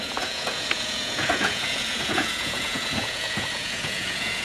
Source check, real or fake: fake